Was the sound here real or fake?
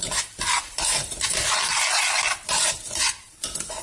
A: real